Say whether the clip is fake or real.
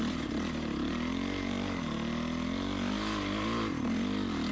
real